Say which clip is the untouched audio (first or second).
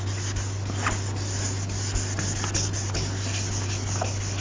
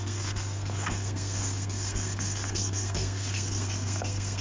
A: first